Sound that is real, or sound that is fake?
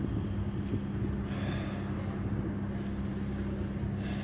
real